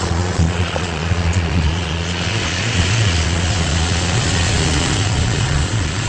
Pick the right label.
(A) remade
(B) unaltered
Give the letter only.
A